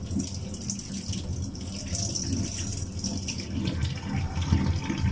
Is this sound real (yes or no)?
yes